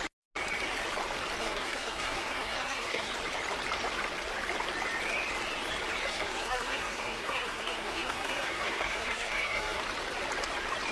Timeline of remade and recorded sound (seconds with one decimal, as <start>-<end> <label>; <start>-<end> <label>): 0.0-1.4 recorded; 1.4-3.1 remade; 3.1-6.1 recorded; 6.1-9.8 remade; 9.8-10.9 recorded